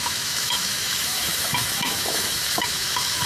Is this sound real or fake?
fake